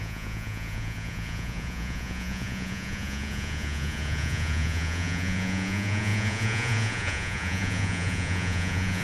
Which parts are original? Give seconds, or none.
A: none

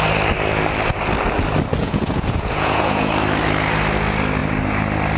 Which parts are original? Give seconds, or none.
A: 0.0-1.8; 3.1-5.2

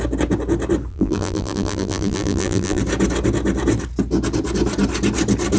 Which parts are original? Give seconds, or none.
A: 0.0-0.9; 2.8-5.6

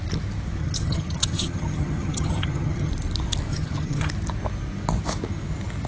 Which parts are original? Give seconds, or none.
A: 0.0-0.6; 2.9-3.5; 4.1-5.9

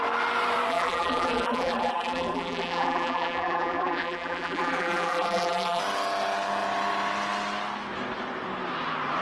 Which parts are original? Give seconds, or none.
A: 0.0-0.7; 5.8-9.2

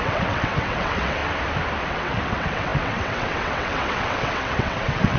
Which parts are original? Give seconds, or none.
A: 1.2-1.9

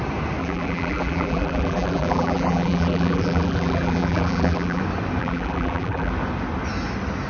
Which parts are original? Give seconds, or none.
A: 0.0-0.4; 4.8-5.2; 6.1-7.3

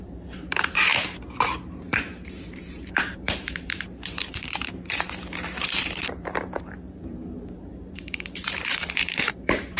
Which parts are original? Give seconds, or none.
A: 0.9-1.4